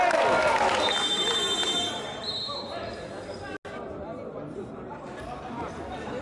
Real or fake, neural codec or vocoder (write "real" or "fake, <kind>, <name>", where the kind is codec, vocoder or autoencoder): real